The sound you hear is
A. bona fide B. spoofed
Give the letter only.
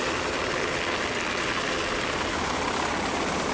A